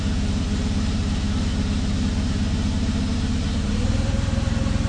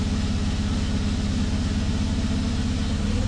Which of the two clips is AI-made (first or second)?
first